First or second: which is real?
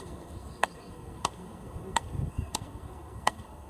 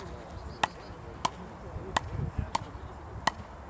second